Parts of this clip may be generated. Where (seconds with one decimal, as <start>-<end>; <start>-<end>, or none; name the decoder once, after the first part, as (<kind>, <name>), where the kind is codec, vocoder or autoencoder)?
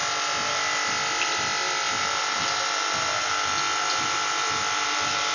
none